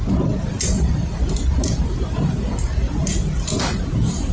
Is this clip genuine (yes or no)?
yes